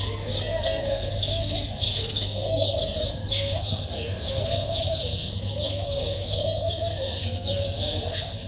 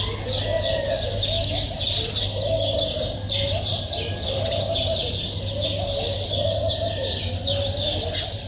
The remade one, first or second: first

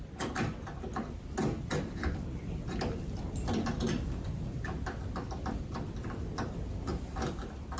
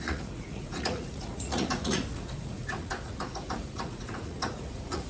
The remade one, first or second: second